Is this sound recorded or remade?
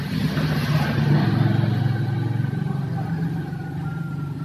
recorded